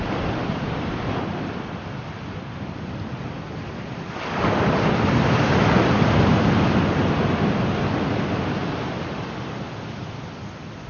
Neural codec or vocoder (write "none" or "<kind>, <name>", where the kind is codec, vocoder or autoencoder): none